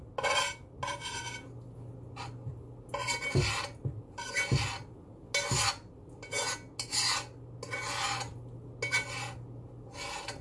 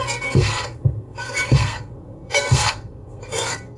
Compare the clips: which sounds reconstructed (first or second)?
second